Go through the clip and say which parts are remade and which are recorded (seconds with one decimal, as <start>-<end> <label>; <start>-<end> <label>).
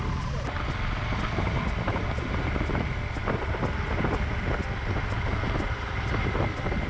0.0-6.9 recorded